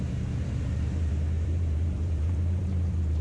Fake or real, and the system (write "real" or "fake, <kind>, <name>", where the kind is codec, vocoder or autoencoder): fake, vocoder, BigVGAN v2